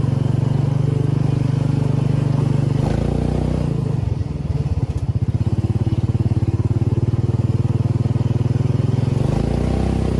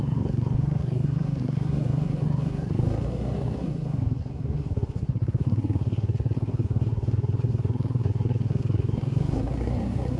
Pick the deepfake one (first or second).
second